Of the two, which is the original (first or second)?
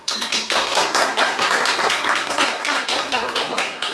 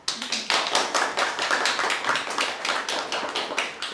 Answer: second